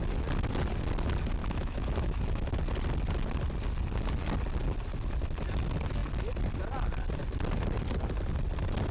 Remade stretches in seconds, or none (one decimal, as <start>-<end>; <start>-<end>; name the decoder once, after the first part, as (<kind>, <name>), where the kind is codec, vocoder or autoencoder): 1.4-2.5 (autoencoder, DAC-VAE)